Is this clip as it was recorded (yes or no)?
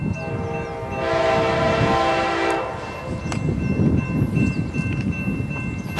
yes